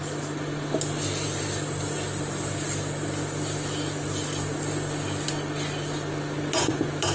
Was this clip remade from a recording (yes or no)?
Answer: no